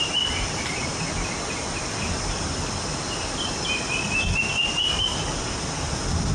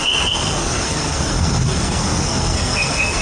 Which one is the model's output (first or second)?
second